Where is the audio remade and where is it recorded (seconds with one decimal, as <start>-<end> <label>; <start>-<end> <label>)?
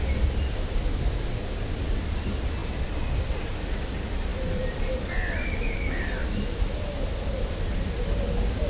0.0-8.7 recorded